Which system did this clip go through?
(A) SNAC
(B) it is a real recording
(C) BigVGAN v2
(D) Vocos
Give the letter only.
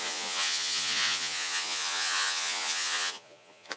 D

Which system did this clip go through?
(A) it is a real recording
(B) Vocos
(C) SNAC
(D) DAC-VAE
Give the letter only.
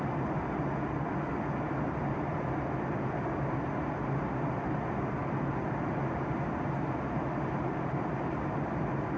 A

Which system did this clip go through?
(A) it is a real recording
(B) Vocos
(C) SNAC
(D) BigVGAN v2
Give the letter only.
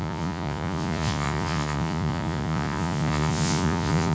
B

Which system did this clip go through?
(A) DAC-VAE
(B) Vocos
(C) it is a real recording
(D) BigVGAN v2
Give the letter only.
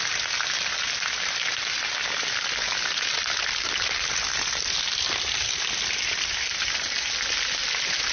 C